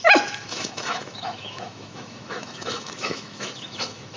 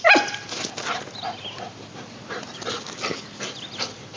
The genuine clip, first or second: second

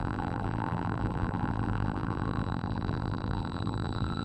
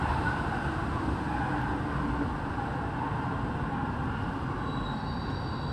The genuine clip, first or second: second